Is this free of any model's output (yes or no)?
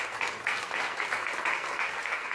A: no